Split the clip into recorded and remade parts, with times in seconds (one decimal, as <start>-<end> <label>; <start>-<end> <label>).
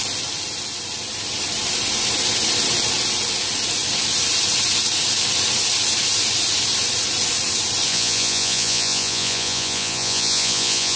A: 0.0-7.9 recorded; 7.9-11.0 remade